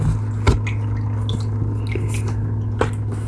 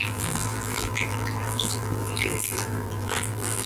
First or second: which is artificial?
second